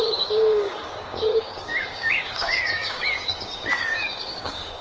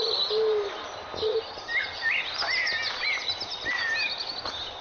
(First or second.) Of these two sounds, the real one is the second